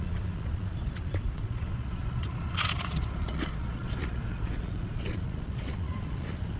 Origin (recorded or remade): remade